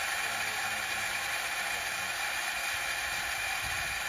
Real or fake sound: real